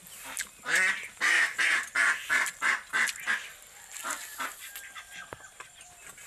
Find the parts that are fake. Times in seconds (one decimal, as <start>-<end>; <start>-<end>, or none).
none